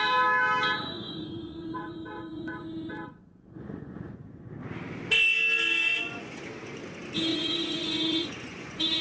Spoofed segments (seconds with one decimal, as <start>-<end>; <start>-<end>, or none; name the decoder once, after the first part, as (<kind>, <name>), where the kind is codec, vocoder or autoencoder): 0.8-4.5 (vocoder, Vocos); 5.9-6.4; 7.3-9.0